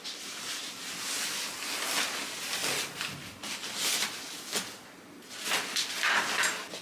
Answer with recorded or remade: recorded